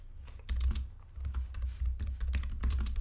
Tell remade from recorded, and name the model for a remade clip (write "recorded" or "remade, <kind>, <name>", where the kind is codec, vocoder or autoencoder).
recorded